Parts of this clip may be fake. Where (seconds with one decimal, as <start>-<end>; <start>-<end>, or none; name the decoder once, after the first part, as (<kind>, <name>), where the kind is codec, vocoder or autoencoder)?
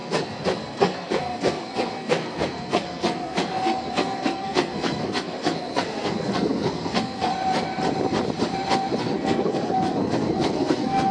0.0-7.3 (codec, SNAC); 9.0-11.1